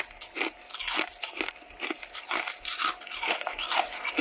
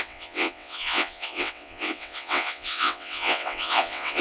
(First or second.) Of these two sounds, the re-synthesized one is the second